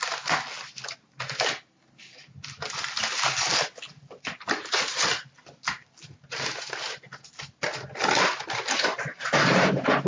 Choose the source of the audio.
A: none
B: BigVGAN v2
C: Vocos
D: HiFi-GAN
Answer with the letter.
A